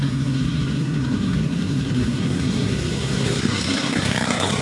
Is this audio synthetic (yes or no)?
yes